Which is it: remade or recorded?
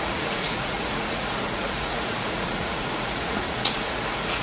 remade